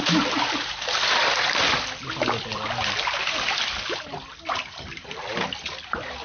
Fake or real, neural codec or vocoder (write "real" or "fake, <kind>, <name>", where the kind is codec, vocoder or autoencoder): real